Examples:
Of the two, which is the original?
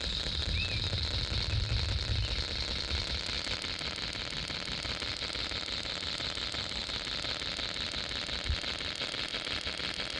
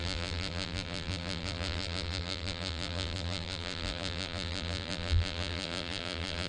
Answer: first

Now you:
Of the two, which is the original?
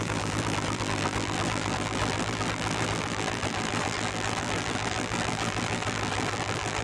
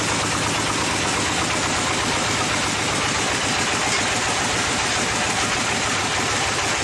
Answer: second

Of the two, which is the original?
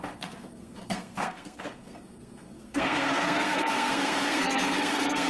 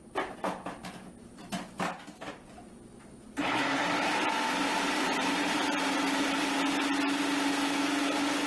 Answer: second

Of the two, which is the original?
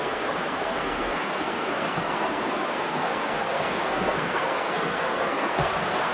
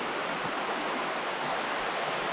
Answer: second